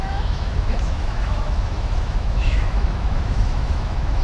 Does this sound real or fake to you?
fake